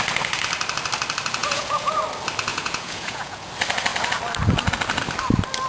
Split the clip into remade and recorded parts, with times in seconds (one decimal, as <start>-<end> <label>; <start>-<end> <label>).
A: 0.0-1.4 recorded; 1.4-2.0 remade; 2.0-2.5 recorded; 2.5-3.5 remade; 3.5-5.7 recorded